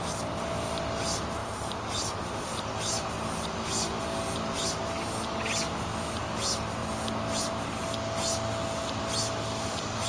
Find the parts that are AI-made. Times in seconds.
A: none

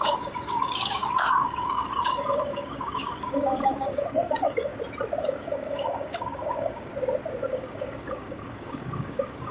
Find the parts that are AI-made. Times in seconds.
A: 0.0-4.7 (codec, DAC); 5.2-6.9; 7.5-9.5

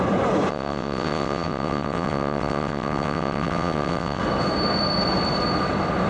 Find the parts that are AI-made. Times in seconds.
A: 0.5-4.2 (vocoder, WaveNeXt)

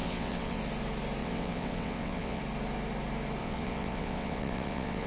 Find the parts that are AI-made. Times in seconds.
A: 0.0-0.6 (vocoder, WaveNeXt); 1.2-2.4; 3.4-5.1

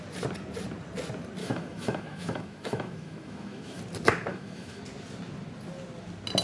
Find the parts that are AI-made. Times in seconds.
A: 1.4-3.8 (autoencoder, DAC-VAE); 4.3-4.8

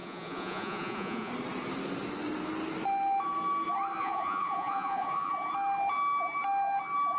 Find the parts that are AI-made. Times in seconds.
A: 0.0-1.3 (vocoder, Vocos); 3.9-5.3

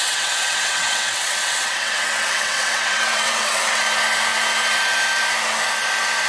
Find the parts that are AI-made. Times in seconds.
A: 0.0-3.8 (vocoder, WaveNeXt)